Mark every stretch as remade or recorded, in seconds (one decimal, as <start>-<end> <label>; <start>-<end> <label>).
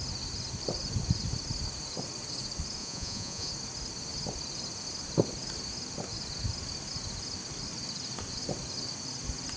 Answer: 0.0-2.8 recorded; 2.8-3.5 remade; 3.5-9.6 recorded